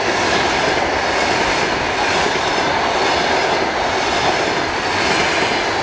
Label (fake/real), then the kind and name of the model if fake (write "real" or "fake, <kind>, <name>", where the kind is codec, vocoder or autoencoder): real